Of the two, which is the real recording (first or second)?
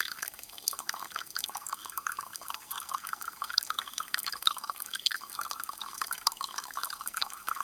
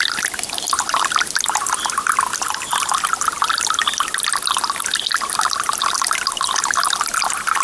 second